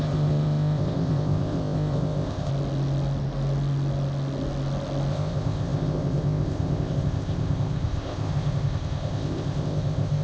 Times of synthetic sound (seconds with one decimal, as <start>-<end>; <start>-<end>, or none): 0.0-2.5; 5.1-10.2